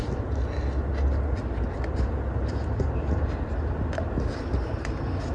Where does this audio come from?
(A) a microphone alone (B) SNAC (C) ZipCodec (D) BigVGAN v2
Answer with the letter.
A